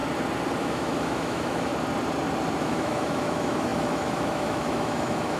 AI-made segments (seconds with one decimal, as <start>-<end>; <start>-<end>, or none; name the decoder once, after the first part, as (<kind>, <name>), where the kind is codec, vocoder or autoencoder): 0.6-1.7 (autoencoder, DAC-VAE); 2.6-5.4